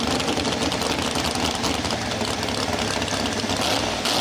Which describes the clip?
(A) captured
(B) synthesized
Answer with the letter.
A